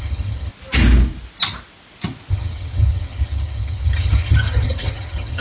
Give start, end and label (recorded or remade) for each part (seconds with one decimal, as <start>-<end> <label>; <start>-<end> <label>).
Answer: 0.0-0.5 remade; 0.5-2.3 recorded; 2.3-5.4 remade